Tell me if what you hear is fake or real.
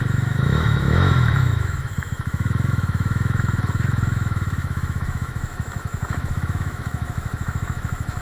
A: fake